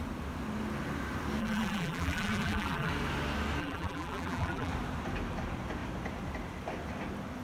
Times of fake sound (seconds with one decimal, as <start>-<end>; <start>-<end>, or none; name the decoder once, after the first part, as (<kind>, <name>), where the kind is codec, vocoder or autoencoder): 1.4-2.9 (vocoder, BigVGAN v2); 3.6-4.7